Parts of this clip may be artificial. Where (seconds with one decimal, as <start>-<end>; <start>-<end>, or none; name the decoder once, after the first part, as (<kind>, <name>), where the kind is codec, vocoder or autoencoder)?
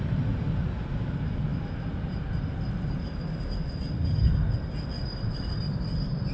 none